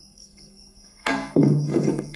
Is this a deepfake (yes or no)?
yes